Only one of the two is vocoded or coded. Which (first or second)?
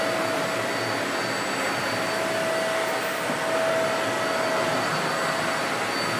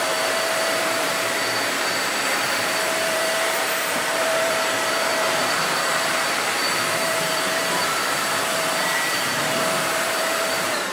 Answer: second